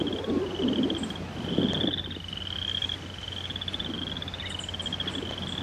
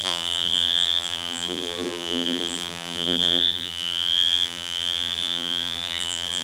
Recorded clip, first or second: first